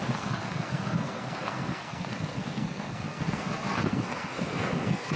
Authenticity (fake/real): fake